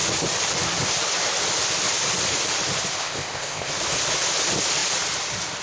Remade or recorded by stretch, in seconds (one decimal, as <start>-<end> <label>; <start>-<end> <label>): 0.0-3.0 recorded; 3.0-3.7 remade; 3.7-5.6 recorded